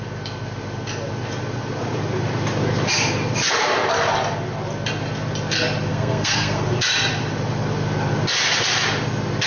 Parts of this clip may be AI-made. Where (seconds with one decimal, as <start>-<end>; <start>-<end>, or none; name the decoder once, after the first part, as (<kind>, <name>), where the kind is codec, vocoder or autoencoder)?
5.9-6.7 (codec, SNAC)

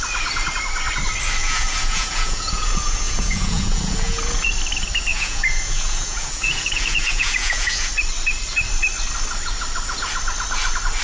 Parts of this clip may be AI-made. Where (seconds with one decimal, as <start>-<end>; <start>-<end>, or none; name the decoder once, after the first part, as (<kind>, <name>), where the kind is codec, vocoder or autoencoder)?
1.4-4.5 (vocoder, Vocos); 5.1-7.9